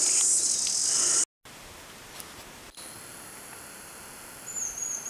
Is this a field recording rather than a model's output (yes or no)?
yes